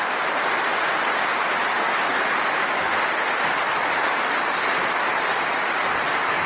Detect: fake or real real